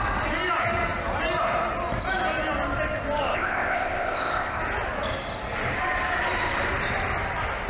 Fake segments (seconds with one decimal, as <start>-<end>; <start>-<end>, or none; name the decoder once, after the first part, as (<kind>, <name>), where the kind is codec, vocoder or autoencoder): 3.3-4.6 (codec, ZipCodec)